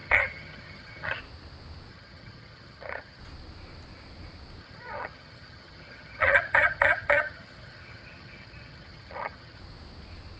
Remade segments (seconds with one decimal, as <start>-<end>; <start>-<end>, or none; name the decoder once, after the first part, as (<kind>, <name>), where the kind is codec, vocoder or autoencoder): 0.0-1.2 (vocoder, HiFi-GAN); 1.9-3.2; 4.6-9.6